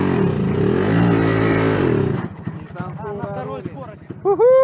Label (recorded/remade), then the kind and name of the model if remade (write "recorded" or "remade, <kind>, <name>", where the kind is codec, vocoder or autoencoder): recorded